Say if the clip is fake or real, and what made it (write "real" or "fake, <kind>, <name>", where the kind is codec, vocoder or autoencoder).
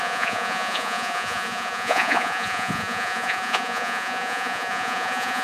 fake, vocoder, Vocos